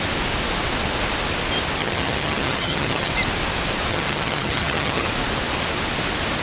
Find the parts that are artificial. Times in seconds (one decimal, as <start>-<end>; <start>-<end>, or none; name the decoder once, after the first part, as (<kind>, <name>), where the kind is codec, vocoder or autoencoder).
1.8-3.1 (vocoder, HiFi-GAN); 3.9-5.1